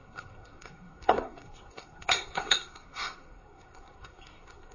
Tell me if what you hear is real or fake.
fake